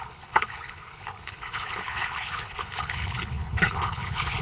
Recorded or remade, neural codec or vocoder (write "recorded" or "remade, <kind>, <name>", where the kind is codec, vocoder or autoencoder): remade, codec, HILCodec